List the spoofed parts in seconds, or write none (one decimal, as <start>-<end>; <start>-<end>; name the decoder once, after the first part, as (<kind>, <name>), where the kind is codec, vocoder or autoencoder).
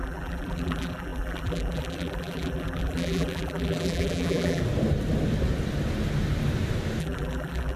0.0-4.6 (vocoder, BigVGAN v2); 7.0-7.8